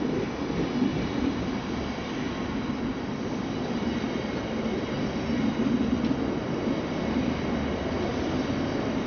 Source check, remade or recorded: recorded